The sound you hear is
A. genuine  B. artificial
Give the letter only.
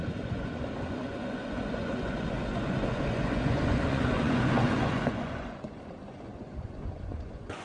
B